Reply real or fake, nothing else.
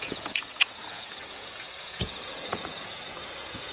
fake